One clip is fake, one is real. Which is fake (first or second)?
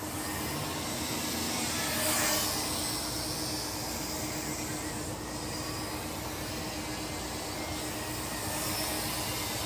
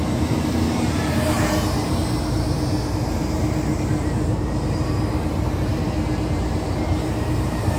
second